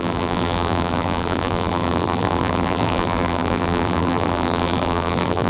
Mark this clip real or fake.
fake